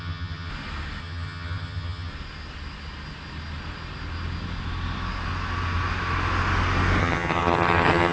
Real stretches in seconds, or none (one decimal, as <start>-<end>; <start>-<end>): 0.5-1.0; 2.1-7.0